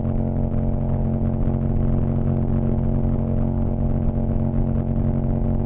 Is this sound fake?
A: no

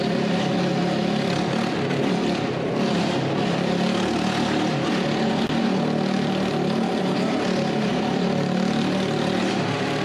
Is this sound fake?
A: no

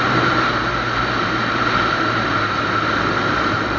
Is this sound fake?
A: yes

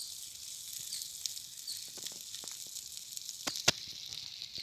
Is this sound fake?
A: no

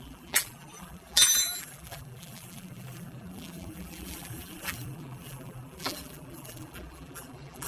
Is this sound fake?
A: yes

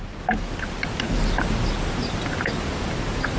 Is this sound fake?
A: no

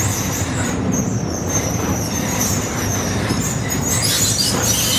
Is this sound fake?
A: yes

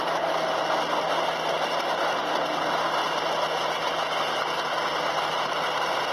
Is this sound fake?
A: no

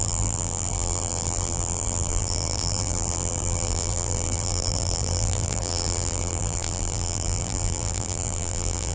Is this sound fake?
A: yes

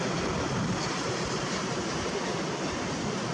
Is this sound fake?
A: no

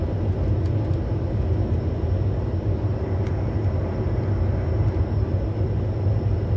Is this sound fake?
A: no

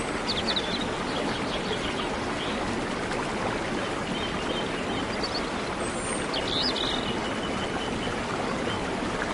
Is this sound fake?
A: no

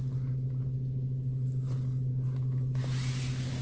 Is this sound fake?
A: no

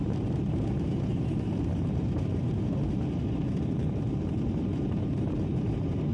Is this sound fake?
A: yes